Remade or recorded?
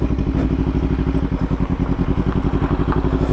recorded